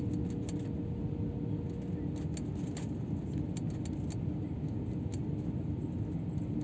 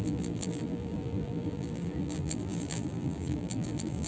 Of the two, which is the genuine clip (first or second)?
first